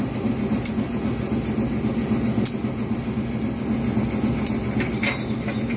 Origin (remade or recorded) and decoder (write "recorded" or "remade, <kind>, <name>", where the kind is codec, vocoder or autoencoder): recorded